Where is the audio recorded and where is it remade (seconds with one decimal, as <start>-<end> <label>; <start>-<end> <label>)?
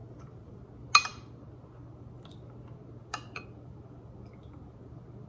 0.0-0.6 remade; 0.6-5.3 recorded